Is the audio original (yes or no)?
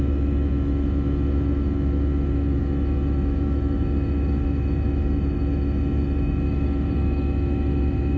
no